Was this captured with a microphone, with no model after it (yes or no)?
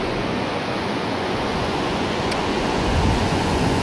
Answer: no